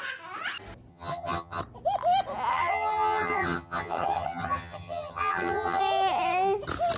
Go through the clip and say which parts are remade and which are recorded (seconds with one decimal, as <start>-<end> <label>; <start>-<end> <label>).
0.0-0.9 recorded; 0.9-1.6 remade; 1.6-2.5 recorded; 2.5-5.8 remade; 5.8-7.0 recorded